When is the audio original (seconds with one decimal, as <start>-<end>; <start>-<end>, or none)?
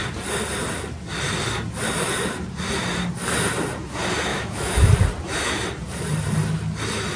0.0-4.3; 4.9-7.2